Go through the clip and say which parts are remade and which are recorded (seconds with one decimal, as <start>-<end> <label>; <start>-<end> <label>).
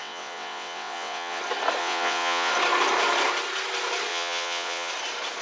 0.0-1.4 remade; 1.4-1.8 recorded; 1.8-2.5 remade; 2.5-4.1 recorded; 4.1-4.9 remade; 4.9-5.4 recorded